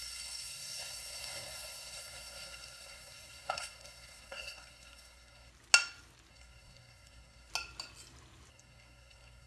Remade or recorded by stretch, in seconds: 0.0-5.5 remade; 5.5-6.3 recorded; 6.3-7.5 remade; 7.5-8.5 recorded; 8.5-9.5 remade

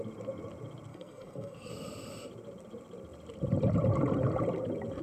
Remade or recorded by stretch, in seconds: 0.0-0.9 recorded; 0.9-1.7 remade; 1.7-5.0 recorded

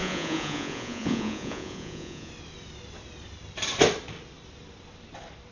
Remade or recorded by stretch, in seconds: 0.0-2.3 remade; 2.3-5.5 recorded

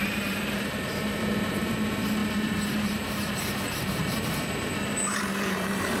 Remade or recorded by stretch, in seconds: 0.0-6.0 remade

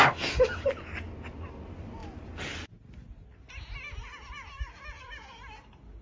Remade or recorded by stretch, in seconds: 0.0-6.0 recorded